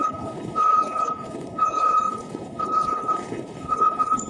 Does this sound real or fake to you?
fake